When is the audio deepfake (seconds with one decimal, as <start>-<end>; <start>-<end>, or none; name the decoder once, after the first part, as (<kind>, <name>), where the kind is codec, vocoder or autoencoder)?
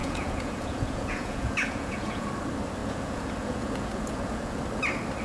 0.0-2.3 (vocoder, Vocos); 2.8-4.6